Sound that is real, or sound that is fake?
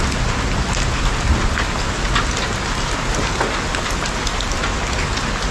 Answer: real